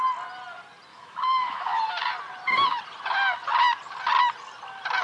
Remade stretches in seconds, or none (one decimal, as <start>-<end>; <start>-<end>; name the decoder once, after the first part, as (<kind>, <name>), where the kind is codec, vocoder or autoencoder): 0.9-1.8 (autoencoder, DAC-VAE)